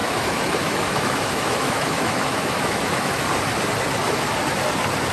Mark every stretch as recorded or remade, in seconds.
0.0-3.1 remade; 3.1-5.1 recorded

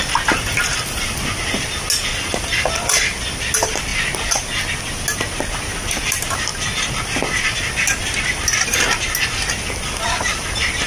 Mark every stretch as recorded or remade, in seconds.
0.0-10.9 recorded

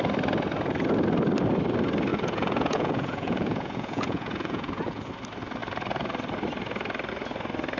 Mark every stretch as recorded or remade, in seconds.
0.0-2.1 recorded; 2.1-5.1 remade; 5.1-7.8 recorded